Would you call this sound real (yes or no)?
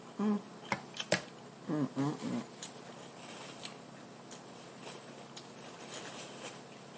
yes